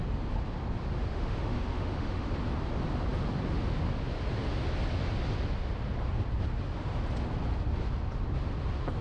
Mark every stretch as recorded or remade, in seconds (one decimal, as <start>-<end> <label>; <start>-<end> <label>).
0.0-1.1 recorded; 1.1-2.3 remade; 2.3-9.0 recorded